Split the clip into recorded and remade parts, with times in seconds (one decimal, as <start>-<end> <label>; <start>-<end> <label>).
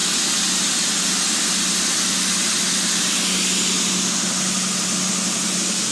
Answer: 0.0-5.9 recorded